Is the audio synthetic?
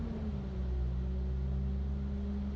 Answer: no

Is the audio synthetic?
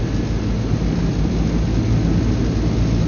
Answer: no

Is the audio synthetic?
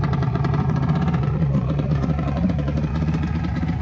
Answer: yes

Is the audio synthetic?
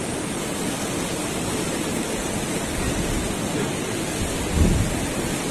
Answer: no